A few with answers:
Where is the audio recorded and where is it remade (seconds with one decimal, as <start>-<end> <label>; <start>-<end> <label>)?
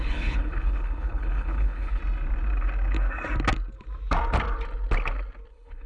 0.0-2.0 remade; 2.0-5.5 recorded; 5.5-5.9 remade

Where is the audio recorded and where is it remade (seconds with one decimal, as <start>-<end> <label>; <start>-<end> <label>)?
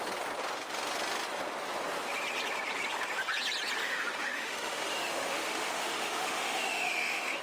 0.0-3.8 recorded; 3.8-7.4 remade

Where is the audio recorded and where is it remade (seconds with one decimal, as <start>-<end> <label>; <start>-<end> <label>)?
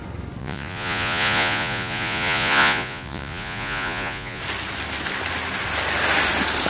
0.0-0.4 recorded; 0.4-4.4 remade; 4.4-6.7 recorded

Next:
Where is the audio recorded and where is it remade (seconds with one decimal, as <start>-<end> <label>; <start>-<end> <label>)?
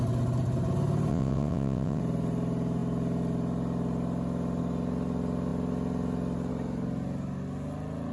0.0-1.1 recorded; 1.1-2.0 remade; 2.0-8.1 recorded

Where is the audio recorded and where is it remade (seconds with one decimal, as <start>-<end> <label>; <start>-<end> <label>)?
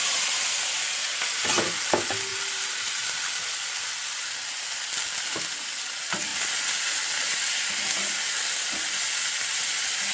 0.0-2.3 recorded; 2.3-3.8 remade; 3.8-10.1 recorded